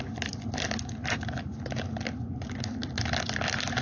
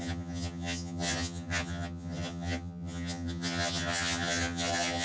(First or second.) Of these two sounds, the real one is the first